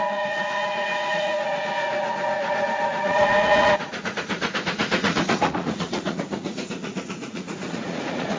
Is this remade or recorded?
remade